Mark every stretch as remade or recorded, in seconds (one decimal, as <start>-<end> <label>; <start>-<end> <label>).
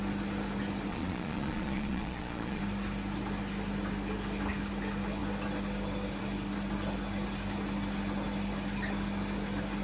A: 0.0-0.9 recorded; 0.9-2.6 remade; 2.6-9.8 recorded